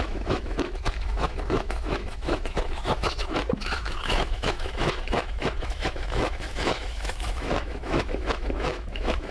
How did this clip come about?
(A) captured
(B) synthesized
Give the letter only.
B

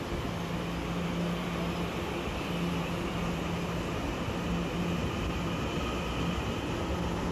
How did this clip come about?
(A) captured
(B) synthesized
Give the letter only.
A